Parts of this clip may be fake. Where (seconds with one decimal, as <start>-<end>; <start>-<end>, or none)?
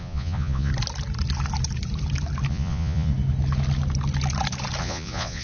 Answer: 0.0-0.7; 2.5-3.1; 4.8-5.4